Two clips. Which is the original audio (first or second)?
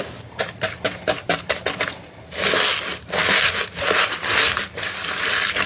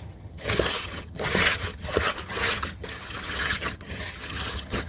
first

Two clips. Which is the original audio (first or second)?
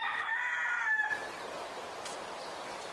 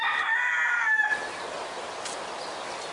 second